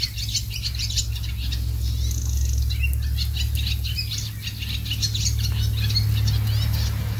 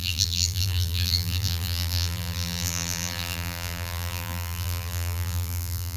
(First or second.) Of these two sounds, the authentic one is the first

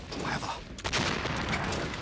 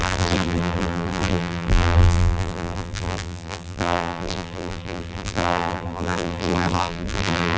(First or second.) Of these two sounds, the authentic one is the first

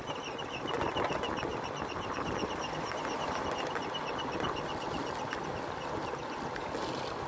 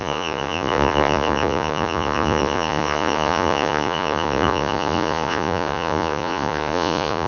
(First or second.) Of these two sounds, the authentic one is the first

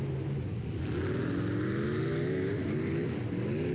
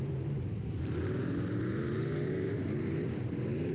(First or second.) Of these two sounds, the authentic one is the first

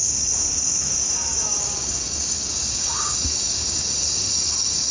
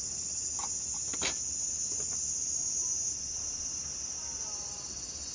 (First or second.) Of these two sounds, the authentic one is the second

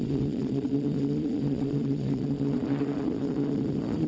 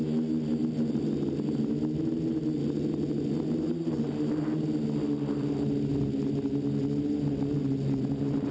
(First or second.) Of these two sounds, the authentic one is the second